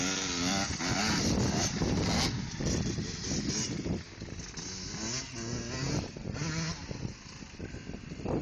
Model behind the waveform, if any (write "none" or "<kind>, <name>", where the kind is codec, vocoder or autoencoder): none